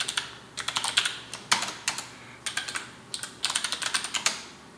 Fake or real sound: real